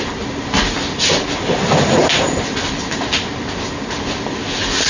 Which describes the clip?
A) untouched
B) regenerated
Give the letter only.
A